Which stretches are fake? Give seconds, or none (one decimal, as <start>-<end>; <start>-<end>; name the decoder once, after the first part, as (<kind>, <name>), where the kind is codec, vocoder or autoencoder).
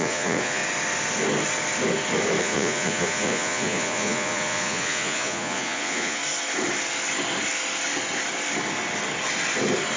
0.0-0.6 (vocoder, Vocos); 2.4-6.2